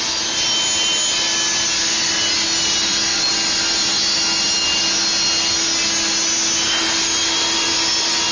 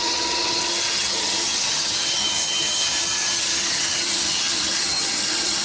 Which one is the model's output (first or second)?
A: second